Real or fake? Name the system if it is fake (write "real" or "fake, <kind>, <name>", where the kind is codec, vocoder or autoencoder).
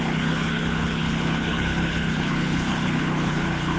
fake, codec, HILCodec